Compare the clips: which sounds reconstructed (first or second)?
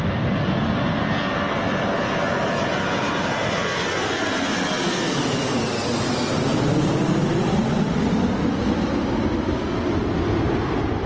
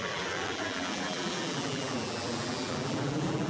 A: second